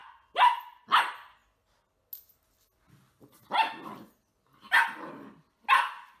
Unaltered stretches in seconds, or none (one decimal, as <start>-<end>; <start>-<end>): 0.0-6.2